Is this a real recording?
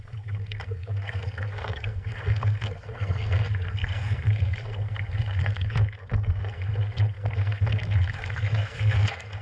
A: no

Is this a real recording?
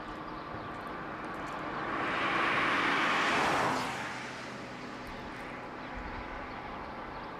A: yes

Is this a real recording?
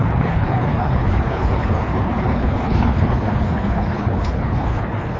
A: no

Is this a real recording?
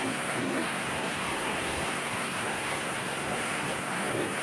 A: no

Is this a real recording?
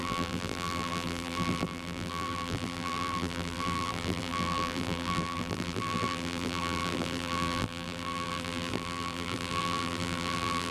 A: no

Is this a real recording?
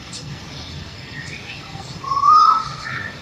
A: no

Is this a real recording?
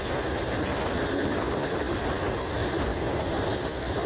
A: yes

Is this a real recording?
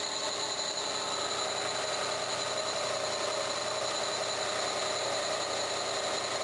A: yes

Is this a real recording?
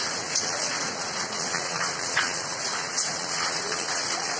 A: no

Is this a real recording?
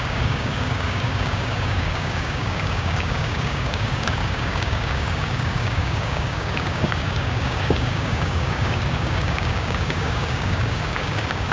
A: no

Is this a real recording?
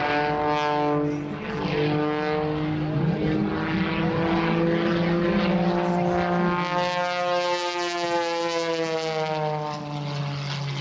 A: yes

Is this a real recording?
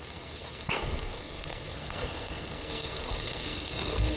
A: no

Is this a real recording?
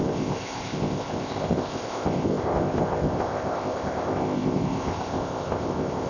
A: no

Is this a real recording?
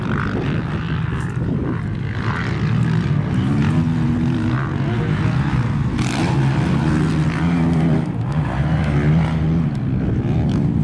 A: yes